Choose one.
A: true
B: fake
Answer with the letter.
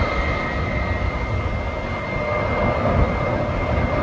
A